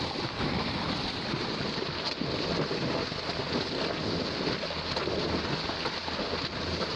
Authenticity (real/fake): real